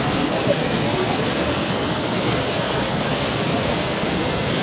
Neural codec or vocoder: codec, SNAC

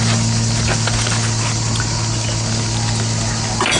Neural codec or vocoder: none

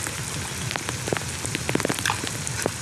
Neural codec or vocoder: none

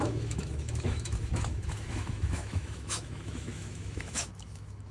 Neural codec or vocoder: autoencoder, DAC-VAE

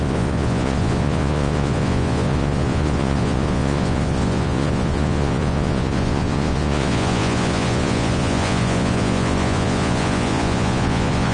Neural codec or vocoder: vocoder, Vocos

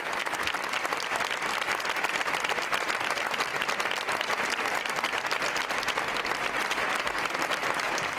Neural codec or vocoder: none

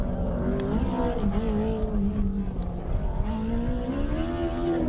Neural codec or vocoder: none